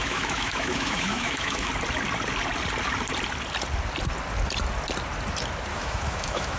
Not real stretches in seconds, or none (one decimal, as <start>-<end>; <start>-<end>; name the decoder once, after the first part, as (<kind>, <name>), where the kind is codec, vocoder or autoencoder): 0.0-1.7 (autoencoder, DAC-VAE); 5.7-6.6